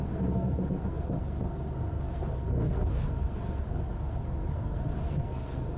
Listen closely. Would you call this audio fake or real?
fake